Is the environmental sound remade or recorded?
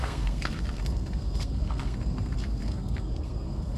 remade